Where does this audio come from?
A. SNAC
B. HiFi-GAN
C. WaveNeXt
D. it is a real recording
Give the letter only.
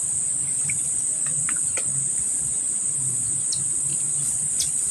D